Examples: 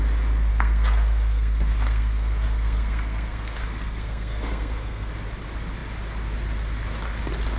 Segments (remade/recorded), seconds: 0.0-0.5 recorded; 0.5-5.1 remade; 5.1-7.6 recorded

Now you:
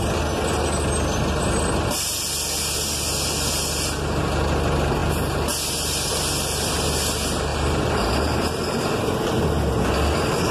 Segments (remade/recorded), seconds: 0.0-7.5 recorded; 7.5-9.2 remade; 9.2-10.5 recorded

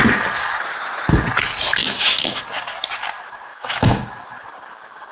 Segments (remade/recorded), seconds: 0.0-1.8 recorded; 1.8-2.4 remade; 2.4-3.5 recorded; 3.5-4.0 remade; 4.0-5.1 recorded

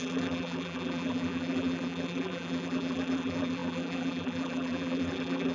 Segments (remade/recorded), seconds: 0.0-5.5 remade